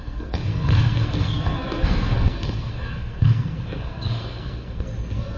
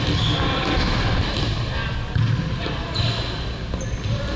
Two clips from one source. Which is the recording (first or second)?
second